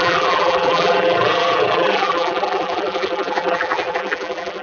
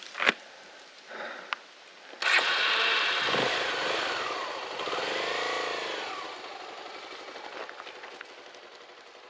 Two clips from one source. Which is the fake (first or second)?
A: first